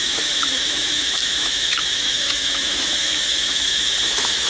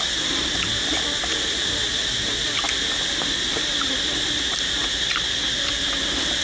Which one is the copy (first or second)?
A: first